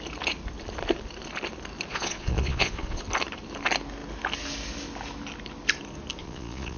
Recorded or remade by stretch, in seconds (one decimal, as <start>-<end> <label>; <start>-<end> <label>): 0.0-1.9 recorded; 1.9-3.0 remade; 3.0-6.2 recorded; 6.2-6.8 remade